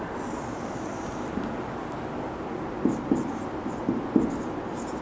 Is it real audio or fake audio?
real